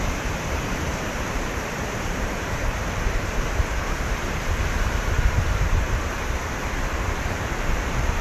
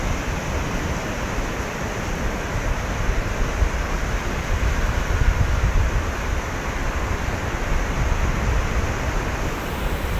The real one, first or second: second